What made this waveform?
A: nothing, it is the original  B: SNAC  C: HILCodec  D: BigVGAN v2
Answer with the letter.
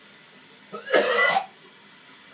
A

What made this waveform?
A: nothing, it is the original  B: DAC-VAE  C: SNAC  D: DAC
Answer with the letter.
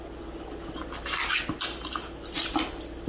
A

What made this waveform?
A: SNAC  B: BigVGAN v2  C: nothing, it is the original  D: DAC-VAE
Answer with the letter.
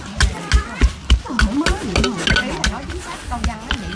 C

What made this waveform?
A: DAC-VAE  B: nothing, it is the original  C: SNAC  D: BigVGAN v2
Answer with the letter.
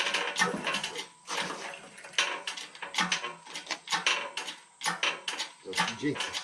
B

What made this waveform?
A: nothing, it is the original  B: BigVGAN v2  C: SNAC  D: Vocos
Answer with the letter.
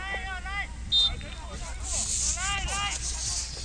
A